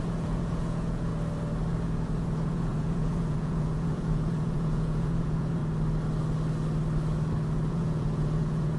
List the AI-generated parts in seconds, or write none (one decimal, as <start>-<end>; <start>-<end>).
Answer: 0.0-1.1; 1.7-5.6; 7.7-8.8